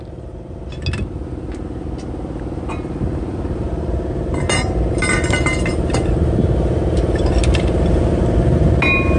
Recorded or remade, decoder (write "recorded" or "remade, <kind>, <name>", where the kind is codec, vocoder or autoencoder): recorded